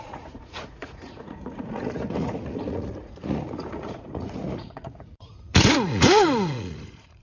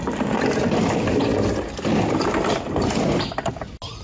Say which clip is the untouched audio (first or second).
second